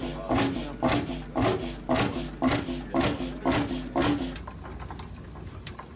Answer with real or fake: real